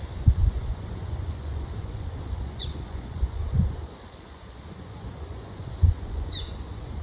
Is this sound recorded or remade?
remade